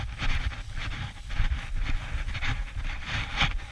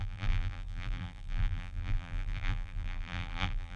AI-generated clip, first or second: second